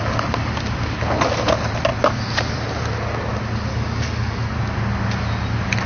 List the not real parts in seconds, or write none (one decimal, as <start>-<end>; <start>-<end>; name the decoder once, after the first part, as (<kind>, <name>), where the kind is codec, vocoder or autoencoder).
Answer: 3.7-4.5 (codec, DAC)